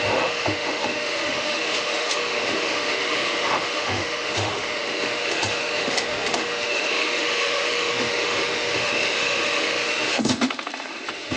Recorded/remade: remade